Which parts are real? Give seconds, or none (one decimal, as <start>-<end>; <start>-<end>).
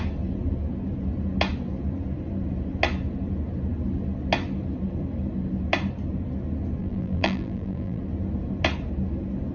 0.0-6.8; 8.0-9.5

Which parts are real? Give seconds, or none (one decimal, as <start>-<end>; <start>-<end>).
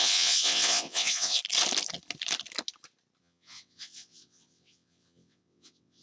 1.4-3.2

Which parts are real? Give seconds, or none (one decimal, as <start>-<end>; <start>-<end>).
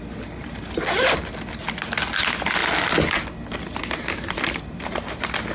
2.6-3.4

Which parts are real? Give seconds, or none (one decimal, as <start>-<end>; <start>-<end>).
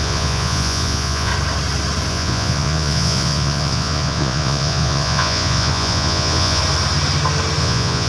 1.3-2.1; 6.6-7.6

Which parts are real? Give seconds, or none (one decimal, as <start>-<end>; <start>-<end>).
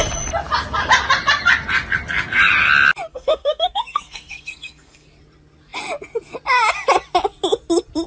0.0-3.1; 5.1-8.1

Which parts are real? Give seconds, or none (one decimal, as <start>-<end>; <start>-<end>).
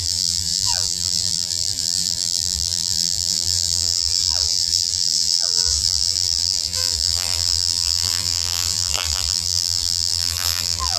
none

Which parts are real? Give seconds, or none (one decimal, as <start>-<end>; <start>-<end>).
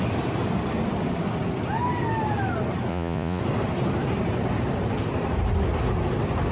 0.0-2.9; 3.4-6.5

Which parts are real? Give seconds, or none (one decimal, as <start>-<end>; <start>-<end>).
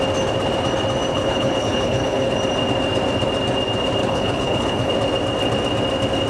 0.0-1.1; 2.3-4.0; 4.9-6.3